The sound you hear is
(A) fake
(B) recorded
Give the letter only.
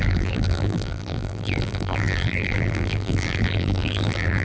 A